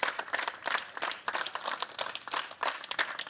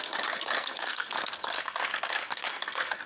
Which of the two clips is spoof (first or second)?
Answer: second